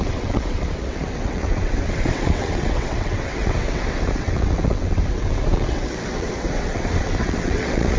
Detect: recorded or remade remade